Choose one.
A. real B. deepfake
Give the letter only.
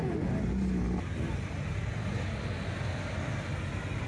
A